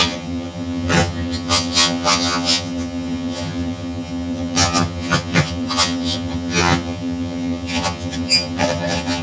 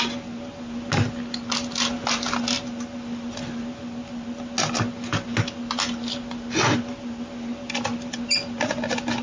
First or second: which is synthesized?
first